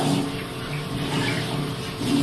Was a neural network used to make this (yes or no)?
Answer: no